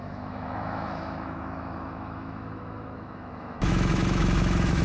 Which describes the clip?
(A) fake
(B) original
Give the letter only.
A